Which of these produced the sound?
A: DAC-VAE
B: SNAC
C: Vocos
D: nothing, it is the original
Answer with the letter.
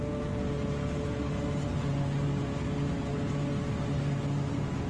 D